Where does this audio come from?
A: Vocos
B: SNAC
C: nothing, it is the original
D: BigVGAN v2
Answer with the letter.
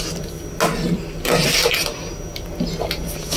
C